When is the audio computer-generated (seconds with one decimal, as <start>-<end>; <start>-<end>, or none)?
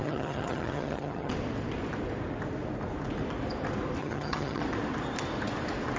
0.0-1.3; 4.0-4.6